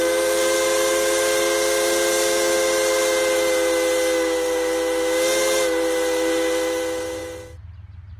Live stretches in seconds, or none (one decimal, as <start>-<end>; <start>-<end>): 0.0-8.2

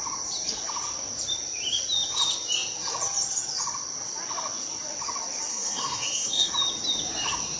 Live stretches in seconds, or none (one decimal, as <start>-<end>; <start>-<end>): 0.0-5.5; 6.5-7.6

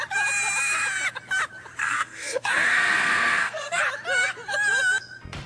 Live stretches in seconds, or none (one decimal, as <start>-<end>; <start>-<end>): 0.0-1.8; 3.8-5.5

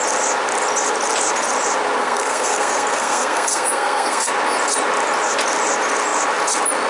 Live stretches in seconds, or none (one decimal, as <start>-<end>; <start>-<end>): 0.0-2.0; 4.3-6.9

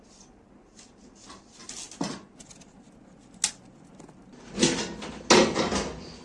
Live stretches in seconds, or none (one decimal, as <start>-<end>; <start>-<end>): 0.0-6.2

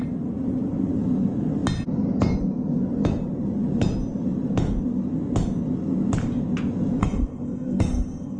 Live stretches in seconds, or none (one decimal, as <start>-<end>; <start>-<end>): 0.0-7.0

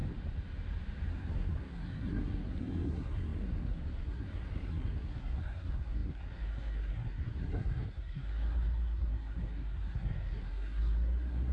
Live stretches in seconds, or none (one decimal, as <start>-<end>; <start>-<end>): 0.0-1.1

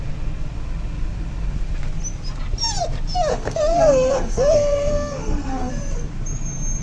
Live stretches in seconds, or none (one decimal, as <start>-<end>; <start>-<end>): 0.0-3.3; 5.7-6.8